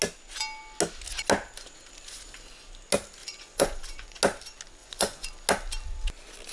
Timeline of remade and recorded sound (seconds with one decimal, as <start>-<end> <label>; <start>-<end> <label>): 0.0-3.2 recorded; 3.2-4.2 remade; 4.2-4.8 recorded; 4.8-5.3 remade; 5.3-6.5 recorded